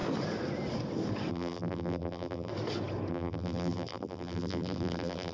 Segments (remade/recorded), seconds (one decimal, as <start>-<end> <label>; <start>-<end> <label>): 0.0-1.3 recorded; 1.3-2.5 remade; 2.5-3.1 recorded; 3.1-5.3 remade